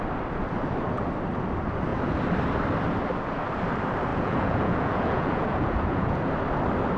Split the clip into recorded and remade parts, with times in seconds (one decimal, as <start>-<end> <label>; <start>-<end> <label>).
0.0-4.1 recorded; 4.1-6.3 remade; 6.3-7.0 recorded